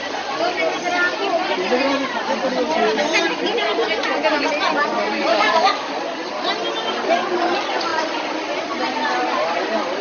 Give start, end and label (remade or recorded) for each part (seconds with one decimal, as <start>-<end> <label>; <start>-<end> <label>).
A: 0.0-5.3 recorded; 5.3-5.9 remade; 5.9-10.0 recorded